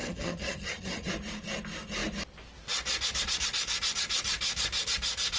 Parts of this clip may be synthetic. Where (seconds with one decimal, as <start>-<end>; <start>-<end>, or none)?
0.0-1.1